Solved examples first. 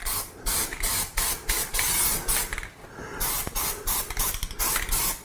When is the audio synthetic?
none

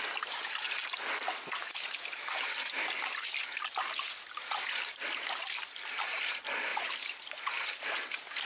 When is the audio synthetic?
none

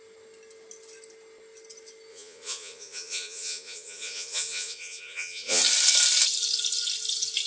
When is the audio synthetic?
2.1-5.6 (vocoder, Vocos)